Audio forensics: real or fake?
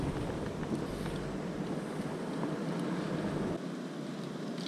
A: real